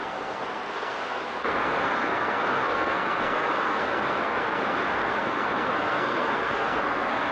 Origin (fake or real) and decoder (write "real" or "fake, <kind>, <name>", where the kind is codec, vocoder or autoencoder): fake, codec, SNAC